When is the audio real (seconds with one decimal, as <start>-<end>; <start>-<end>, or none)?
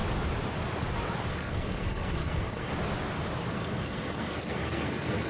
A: 0.0-1.3; 2.7-3.5